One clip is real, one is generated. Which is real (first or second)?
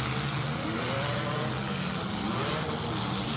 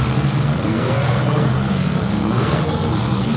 first